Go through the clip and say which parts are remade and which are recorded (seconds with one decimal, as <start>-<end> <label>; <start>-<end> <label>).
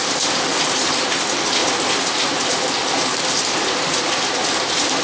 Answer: 0.0-0.5 recorded; 0.5-1.2 remade; 1.2-5.0 recorded